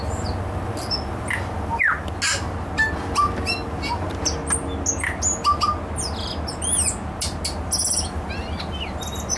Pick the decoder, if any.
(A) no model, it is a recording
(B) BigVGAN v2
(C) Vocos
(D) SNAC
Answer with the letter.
A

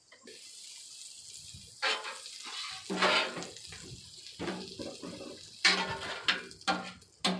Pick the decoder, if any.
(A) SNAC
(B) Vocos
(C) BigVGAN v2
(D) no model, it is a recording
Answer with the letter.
D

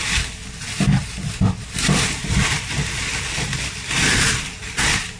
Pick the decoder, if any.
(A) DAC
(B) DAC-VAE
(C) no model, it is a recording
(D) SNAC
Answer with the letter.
C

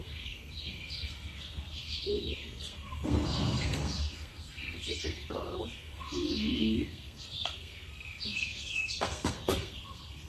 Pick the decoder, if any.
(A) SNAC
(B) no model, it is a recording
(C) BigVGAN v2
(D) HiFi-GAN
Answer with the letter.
A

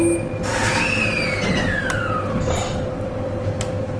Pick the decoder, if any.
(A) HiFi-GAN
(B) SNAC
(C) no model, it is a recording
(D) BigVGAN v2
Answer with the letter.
C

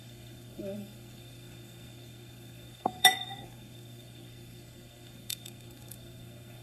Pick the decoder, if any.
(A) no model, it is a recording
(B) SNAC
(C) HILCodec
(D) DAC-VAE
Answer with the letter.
B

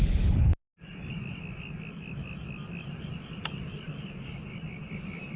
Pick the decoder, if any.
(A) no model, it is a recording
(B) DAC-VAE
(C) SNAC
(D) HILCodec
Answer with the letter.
A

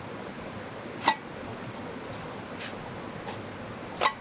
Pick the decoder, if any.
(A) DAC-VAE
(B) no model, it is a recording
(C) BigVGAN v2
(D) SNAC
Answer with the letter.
B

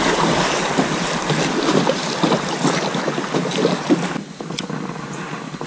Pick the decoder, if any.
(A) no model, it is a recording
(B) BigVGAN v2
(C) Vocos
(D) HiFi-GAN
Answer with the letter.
A